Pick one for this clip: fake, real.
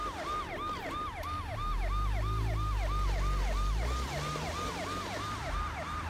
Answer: real